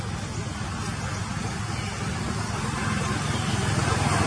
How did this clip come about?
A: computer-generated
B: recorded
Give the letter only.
B